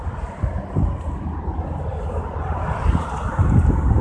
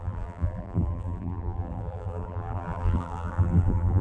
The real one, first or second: first